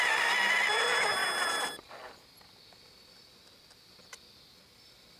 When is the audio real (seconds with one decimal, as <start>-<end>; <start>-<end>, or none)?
0.0-5.2